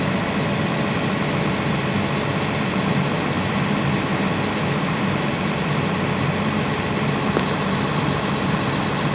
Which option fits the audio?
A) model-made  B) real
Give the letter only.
B